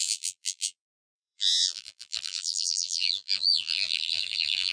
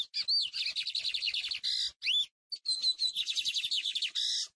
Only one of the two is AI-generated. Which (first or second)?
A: first